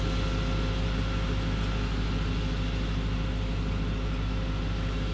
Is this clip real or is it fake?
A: real